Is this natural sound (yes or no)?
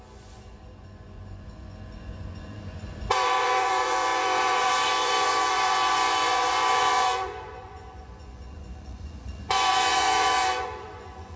no